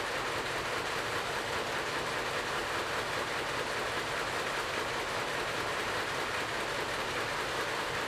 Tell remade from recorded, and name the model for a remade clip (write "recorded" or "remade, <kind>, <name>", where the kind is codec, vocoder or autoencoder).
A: recorded